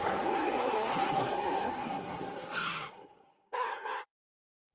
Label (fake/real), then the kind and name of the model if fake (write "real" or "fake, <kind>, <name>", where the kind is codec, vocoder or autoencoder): fake, codec, SNAC